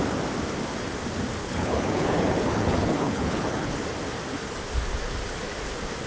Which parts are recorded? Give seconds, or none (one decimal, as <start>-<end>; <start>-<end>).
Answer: 0.0-1.4; 3.7-6.1